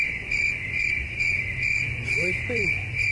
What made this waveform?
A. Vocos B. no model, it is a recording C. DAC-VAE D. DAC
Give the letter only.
A